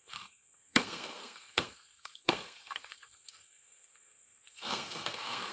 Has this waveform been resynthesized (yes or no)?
yes